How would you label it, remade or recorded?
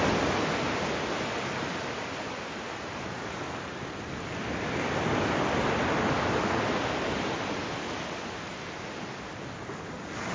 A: recorded